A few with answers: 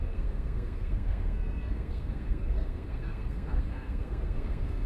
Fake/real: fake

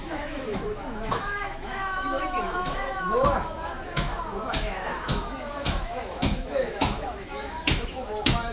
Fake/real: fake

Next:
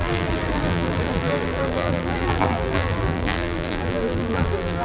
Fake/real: fake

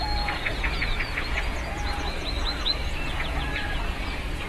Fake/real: fake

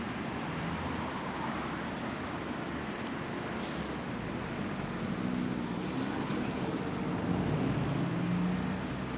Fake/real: real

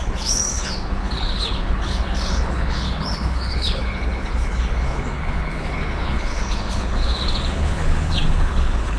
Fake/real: fake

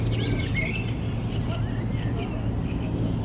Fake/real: real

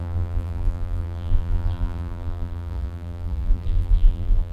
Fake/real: fake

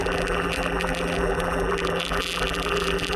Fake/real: fake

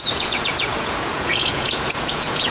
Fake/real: fake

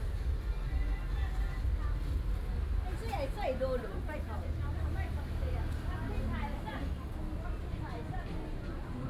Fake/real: real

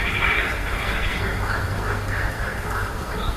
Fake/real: fake